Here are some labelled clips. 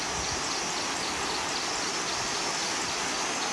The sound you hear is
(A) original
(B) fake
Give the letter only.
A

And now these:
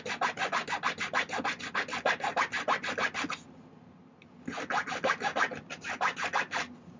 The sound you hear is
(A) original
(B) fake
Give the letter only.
A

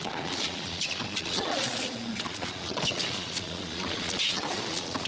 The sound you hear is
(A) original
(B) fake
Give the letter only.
B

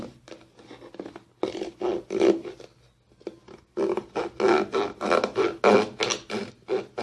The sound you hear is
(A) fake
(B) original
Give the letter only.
B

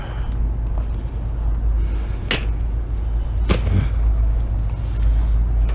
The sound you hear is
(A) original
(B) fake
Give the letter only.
A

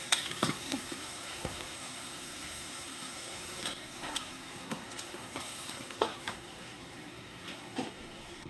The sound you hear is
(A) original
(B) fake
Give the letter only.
B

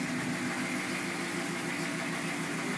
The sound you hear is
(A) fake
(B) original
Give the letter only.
B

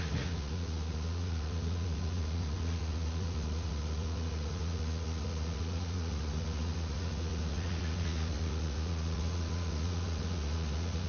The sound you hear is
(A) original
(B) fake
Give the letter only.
B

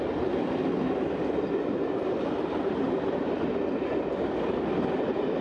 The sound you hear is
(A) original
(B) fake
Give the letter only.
A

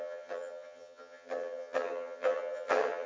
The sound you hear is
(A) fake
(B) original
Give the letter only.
A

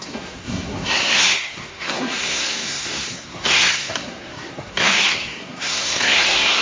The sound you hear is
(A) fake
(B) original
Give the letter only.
A